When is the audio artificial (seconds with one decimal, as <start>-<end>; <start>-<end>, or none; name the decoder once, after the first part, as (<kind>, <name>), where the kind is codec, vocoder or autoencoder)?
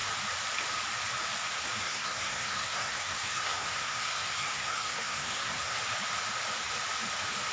1.8-5.8 (codec, SNAC)